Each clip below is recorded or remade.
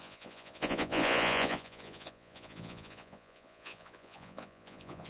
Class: remade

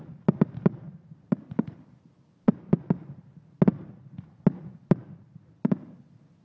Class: recorded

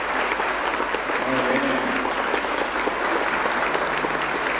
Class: recorded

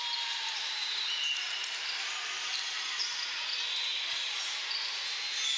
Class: recorded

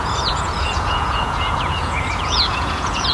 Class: remade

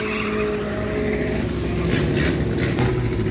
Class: recorded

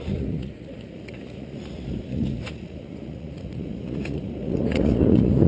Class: remade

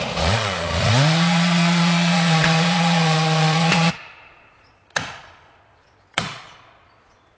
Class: remade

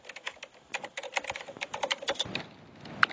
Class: recorded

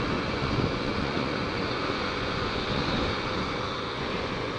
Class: remade